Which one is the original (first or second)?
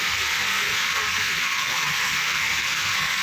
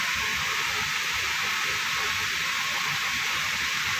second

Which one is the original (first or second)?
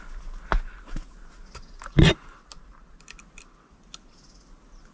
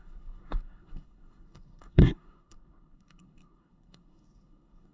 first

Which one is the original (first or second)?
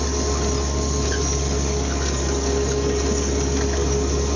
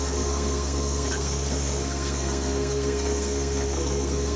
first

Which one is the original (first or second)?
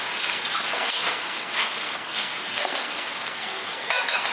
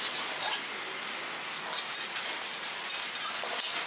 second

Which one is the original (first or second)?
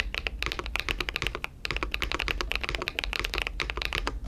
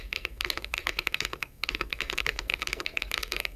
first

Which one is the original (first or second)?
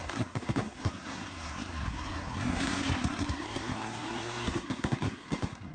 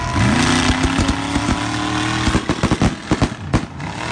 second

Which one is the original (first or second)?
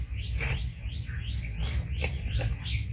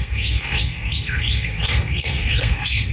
first